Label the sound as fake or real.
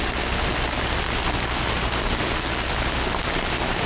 real